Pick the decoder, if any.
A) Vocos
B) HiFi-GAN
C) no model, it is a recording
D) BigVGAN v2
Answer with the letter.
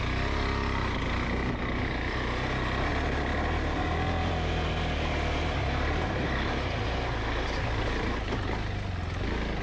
C